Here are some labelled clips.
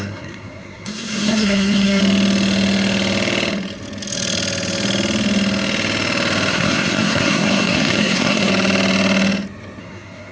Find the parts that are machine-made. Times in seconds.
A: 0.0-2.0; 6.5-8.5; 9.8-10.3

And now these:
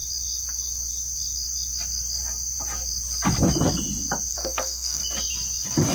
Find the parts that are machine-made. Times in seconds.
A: 4.3-5.0

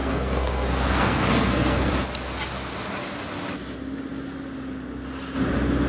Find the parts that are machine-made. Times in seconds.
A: 0.0-1.9

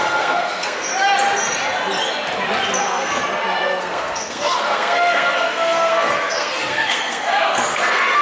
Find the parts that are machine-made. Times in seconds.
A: 0.0-0.9; 2.8-3.2; 3.8-8.2

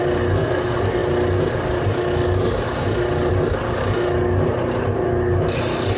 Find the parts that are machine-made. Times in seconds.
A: none

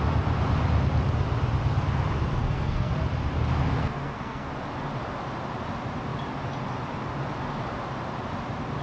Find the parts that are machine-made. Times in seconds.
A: 2.4-2.9; 3.8-4.5

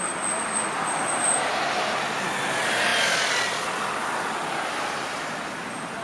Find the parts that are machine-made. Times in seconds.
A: none